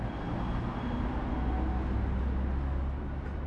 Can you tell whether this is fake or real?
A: real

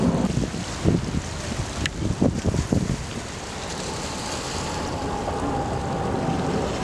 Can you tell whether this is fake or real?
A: real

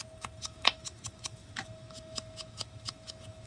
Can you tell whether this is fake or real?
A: fake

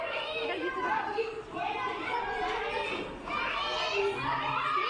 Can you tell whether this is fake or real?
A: real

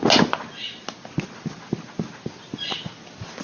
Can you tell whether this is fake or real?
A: real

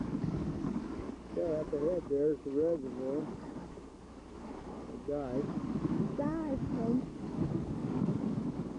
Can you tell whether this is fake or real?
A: fake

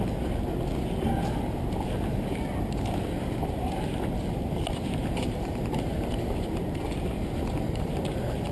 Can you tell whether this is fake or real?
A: real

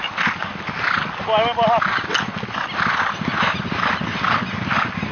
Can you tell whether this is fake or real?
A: real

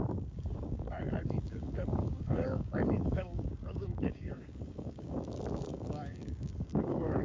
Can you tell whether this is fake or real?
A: fake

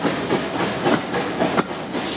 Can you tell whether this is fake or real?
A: real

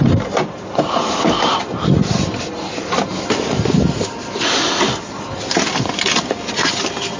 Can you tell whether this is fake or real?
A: real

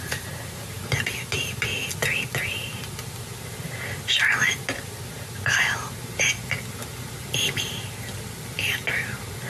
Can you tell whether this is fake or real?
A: real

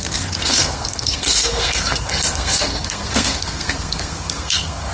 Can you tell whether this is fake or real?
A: fake